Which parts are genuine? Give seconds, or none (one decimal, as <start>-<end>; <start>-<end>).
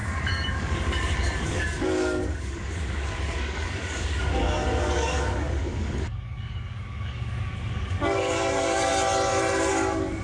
8.9-9.7